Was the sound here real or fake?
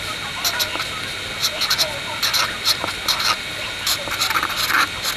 real